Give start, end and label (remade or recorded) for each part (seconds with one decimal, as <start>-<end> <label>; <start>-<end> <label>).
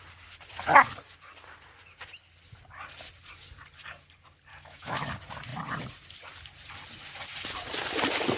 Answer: 0.0-4.5 recorded; 4.5-5.1 remade; 5.1-8.4 recorded